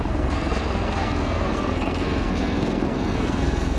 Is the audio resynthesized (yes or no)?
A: yes